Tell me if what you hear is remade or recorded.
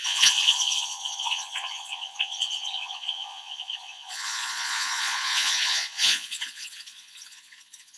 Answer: remade